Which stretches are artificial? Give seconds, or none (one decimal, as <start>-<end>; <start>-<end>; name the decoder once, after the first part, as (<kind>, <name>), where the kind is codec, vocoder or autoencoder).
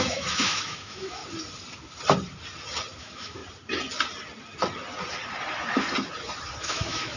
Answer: 0.0-1.2 (autoencoder, DAC-VAE); 3.0-3.4; 6.6-7.2